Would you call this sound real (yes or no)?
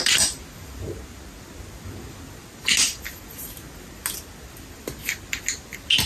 yes